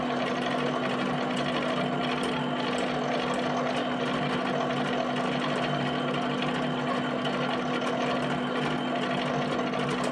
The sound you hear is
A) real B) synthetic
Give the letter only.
A